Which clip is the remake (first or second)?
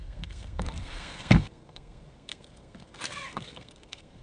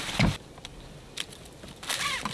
first